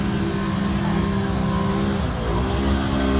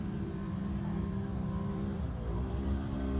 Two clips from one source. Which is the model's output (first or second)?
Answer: second